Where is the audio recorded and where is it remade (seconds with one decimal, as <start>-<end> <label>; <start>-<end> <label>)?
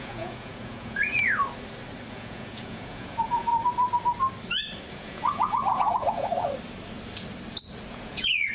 0.0-1.4 remade; 1.4-2.1 recorded; 2.1-3.5 remade; 3.5-4.9 recorded; 4.9-6.3 remade; 6.3-7.9 recorded; 7.9-8.5 remade